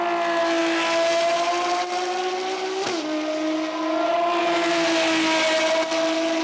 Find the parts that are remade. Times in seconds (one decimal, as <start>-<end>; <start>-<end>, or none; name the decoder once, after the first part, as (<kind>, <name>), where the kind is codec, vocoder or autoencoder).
none

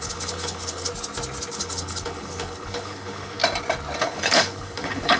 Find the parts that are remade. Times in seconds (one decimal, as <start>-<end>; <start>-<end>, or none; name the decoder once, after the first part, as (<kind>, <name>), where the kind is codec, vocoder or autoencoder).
0.0-0.9 (codec, HILCodec); 1.5-3.4; 4.0-5.2

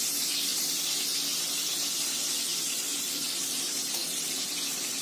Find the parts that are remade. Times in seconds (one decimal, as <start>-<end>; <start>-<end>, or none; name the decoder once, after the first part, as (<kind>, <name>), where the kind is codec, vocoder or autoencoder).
2.5-5.0 (vocoder, BigVGAN v2)

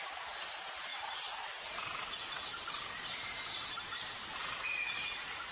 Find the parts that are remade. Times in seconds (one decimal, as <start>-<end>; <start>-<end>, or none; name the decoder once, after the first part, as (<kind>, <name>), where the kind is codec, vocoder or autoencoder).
4.4-5.5 (vocoder, Vocos)